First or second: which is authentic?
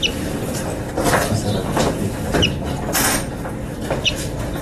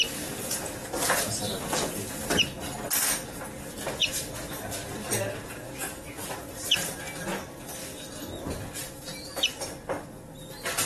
second